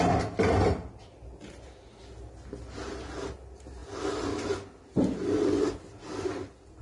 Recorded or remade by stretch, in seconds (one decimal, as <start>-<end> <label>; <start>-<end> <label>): 0.0-6.8 recorded